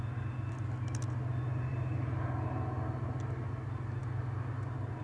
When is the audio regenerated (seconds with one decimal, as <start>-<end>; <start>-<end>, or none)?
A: none